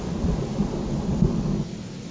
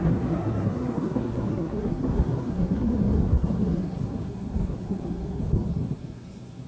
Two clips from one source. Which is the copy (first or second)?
second